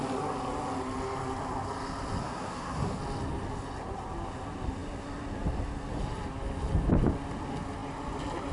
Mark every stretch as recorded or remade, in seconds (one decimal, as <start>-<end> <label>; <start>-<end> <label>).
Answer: 0.0-2.2 recorded; 2.2-3.0 remade; 3.0-8.5 recorded